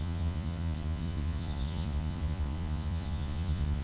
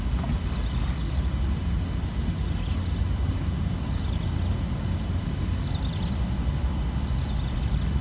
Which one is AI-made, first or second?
first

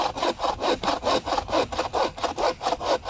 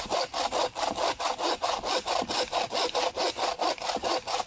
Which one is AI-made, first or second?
second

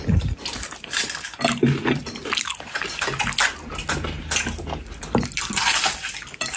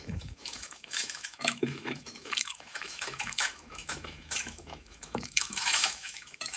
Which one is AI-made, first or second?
second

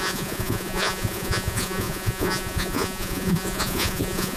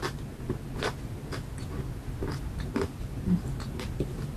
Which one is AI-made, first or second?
first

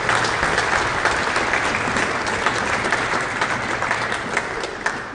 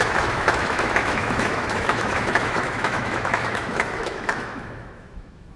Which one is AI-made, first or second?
second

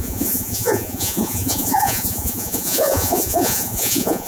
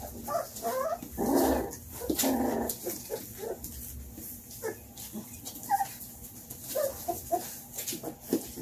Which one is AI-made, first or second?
first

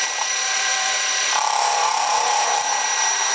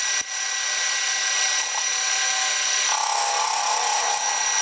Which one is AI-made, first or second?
first